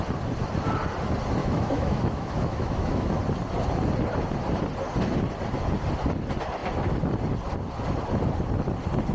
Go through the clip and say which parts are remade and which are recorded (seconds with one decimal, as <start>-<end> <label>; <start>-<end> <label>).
0.0-1.4 recorded; 1.4-3.2 remade; 3.2-9.1 recorded